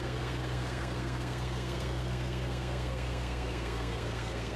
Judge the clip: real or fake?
fake